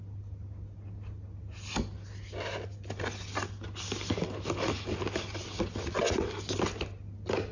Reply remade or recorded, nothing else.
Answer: recorded